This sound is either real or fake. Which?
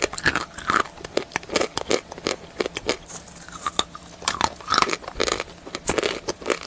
real